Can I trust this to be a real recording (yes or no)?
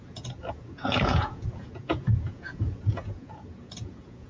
no